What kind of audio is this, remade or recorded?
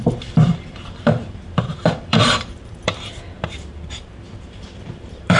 remade